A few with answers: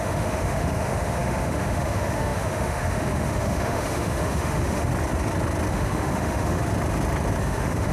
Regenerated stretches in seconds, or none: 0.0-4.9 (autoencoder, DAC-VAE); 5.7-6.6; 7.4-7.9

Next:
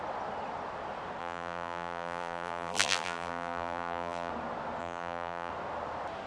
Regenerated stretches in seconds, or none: 1.2-4.3 (vocoder, BigVGAN v2); 4.8-5.5

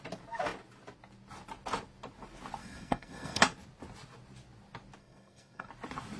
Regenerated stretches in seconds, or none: 2.6-3.4 (codec, SNAC); 5.0-5.7

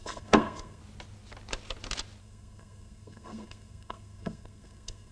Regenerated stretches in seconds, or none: 0.0-0.8 (codec, SNAC); 2.2-5.1